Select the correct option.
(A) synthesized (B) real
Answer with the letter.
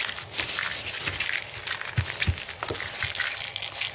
B